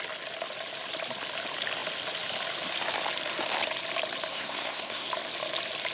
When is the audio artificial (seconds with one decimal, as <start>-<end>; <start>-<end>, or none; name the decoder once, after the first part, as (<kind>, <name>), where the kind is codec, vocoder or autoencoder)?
4.3-5.1 (codec, SNAC)